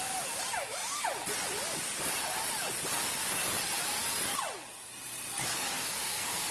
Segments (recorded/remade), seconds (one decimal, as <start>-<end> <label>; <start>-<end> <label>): 0.0-5.5 recorded; 5.5-6.5 remade

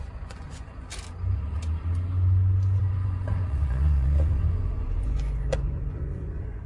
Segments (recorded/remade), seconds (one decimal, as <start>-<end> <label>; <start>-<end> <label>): 0.0-0.9 remade; 0.9-2.8 recorded; 2.8-6.7 remade